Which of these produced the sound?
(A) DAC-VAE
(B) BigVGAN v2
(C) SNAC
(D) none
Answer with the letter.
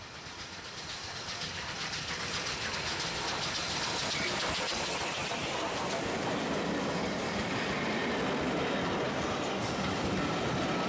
D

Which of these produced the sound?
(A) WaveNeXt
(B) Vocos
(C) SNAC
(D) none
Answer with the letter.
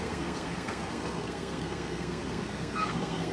C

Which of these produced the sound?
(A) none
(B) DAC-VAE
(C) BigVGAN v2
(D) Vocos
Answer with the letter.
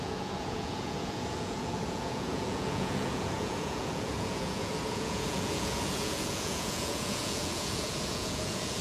D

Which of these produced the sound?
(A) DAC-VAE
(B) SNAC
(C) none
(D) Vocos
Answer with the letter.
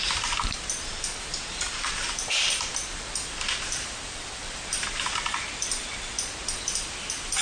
C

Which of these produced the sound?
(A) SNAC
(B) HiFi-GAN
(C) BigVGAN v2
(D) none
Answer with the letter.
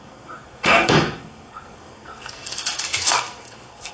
A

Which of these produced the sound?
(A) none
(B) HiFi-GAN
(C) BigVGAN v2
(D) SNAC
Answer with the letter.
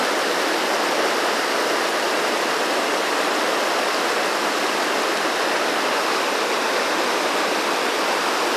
C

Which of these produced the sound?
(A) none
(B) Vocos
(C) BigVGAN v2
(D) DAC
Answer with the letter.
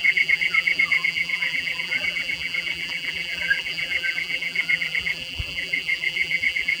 C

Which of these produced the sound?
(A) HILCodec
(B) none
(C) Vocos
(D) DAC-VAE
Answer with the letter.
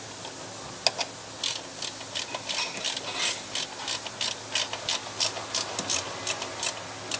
B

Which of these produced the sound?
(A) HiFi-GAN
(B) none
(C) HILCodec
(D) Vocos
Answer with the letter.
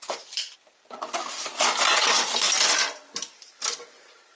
B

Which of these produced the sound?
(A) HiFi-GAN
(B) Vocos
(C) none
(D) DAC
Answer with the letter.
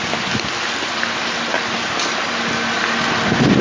C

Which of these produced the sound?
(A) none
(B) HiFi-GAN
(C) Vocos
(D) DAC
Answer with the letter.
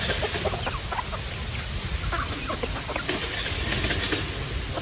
A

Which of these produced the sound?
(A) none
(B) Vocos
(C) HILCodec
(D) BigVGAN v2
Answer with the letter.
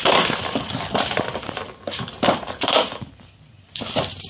D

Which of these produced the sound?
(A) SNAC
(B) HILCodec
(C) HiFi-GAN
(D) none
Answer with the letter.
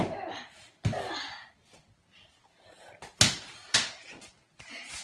D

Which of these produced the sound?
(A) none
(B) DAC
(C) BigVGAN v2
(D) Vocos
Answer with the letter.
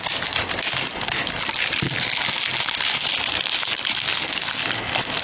A